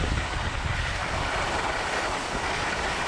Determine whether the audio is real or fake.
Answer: real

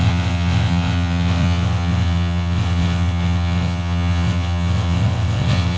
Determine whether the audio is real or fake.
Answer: fake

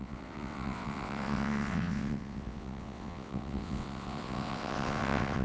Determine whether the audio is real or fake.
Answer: fake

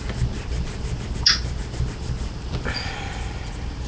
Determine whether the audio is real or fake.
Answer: real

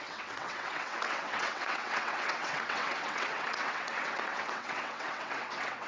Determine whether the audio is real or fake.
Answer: fake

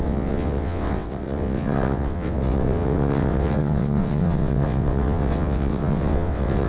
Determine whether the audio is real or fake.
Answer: fake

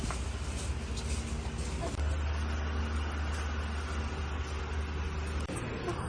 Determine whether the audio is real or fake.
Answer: real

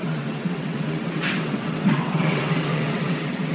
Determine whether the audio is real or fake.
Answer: fake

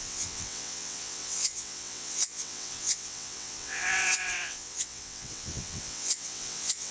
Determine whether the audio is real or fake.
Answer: fake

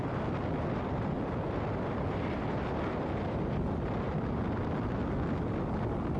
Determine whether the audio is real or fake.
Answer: real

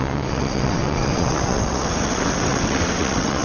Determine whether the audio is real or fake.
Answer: fake